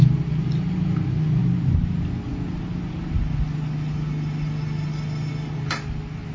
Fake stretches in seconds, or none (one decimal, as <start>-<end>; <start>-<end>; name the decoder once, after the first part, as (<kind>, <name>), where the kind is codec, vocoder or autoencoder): 1.4-2.0 (vocoder, BigVGAN v2)